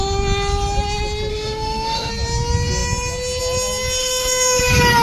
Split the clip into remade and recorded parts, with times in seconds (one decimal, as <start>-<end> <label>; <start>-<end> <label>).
0.0-1.3 recorded; 1.3-2.1 remade; 2.1-4.0 recorded; 4.0-4.6 remade; 4.6-5.0 recorded